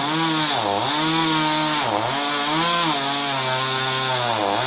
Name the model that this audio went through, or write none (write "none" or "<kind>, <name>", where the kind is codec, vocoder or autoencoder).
none